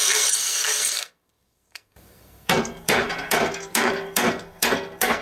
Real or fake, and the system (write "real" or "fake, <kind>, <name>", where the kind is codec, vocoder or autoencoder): fake, codec, SNAC